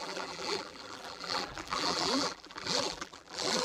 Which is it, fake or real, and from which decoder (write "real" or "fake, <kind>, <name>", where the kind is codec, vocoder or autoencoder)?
fake, vocoder, BigVGAN v2